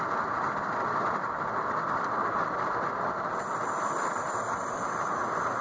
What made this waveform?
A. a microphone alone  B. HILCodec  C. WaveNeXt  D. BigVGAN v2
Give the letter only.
A